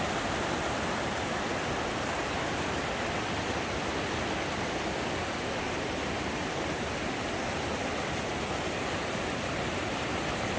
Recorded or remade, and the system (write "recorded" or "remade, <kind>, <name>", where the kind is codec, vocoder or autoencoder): recorded